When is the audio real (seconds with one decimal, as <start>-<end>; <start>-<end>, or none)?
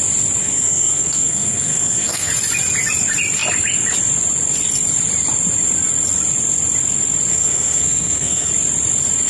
0.0-0.4; 2.3-7.3; 8.5-9.3